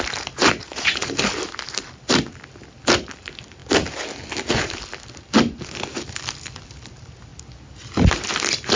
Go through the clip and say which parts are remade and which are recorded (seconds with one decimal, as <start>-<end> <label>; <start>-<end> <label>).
0.0-0.6 recorded; 0.6-1.1 remade; 1.1-8.8 recorded